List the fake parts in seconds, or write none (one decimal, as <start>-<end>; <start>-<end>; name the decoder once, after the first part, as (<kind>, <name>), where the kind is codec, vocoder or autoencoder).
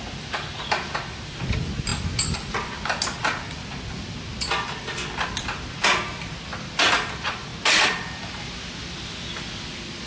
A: none